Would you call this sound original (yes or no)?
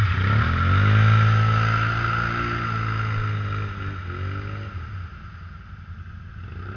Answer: yes